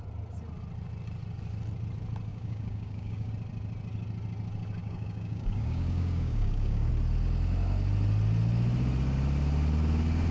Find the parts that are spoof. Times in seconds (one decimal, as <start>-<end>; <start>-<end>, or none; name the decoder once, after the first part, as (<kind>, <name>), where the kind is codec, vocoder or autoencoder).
2.3-3.3 (codec, DAC); 4.8-6.9